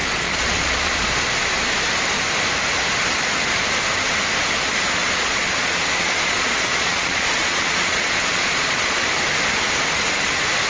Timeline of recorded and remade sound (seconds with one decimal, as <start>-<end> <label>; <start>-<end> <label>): 0.0-1.1 remade; 1.1-5.0 recorded; 5.0-9.0 remade; 9.0-10.7 recorded